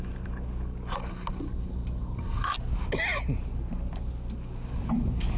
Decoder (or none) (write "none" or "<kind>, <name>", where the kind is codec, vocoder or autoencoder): none